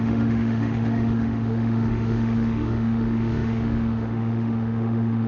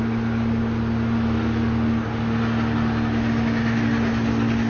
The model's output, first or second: first